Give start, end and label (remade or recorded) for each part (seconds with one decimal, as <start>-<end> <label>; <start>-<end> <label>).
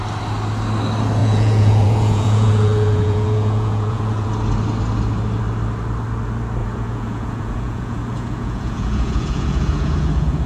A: 0.0-1.2 recorded; 1.2-4.3 remade; 4.3-6.6 recorded; 6.6-10.5 remade